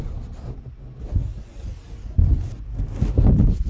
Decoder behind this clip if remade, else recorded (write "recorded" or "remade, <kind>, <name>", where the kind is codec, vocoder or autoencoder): recorded